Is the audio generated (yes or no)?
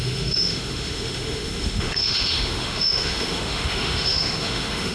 yes